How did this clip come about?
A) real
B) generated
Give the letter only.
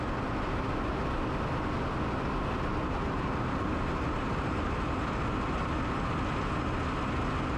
A